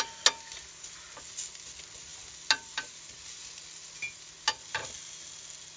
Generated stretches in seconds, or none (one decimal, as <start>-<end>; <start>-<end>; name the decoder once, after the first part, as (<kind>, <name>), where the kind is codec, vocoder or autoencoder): none